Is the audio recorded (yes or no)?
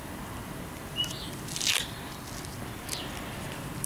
no